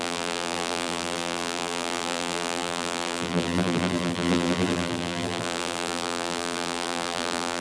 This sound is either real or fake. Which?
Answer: fake